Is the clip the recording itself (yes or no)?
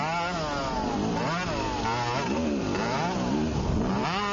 yes